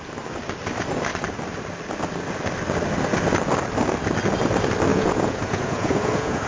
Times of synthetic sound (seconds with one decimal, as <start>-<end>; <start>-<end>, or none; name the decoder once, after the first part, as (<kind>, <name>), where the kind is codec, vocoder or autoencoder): 4.9-6.5 (vocoder, Vocos)